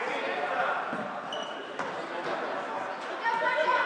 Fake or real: real